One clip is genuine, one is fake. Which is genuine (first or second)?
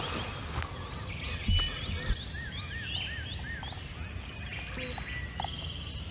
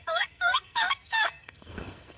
first